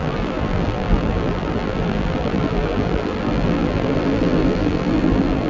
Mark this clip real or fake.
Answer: fake